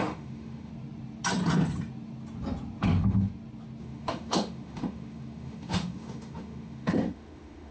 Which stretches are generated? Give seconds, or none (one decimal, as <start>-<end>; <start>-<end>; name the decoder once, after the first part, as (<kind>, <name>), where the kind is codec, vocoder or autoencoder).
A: 0.0-0.7 (autoencoder, DAC-VAE); 2.8-3.3; 3.8-7.7

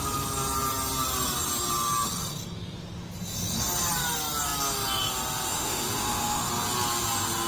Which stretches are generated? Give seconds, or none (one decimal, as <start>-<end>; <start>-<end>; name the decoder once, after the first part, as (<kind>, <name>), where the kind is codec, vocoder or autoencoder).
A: 5.5-6.5 (autoencoder, DAC-VAE)